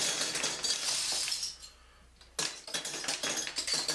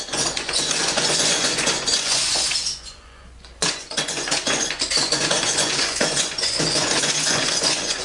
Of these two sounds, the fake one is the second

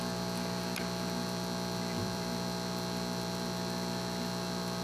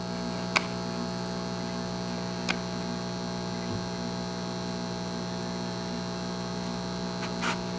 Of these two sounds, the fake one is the first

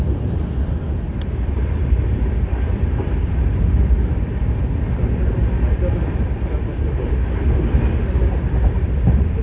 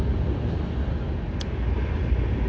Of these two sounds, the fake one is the first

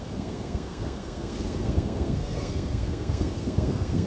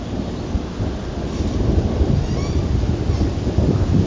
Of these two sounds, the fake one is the first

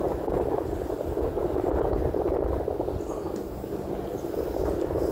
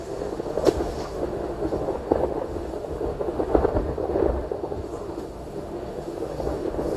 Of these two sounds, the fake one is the second